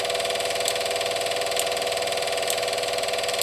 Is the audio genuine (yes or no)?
yes